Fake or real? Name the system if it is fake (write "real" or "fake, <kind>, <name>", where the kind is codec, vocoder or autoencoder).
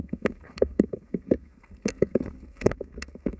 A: fake, codec, SNAC